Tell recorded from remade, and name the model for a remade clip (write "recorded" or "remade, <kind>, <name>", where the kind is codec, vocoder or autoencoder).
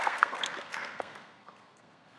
remade, codec, SNAC